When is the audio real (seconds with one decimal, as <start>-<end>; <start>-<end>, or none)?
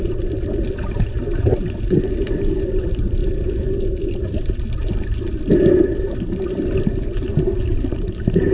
0.0-8.5